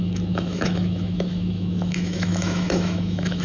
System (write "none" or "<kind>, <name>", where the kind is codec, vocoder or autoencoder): autoencoder, DAC-VAE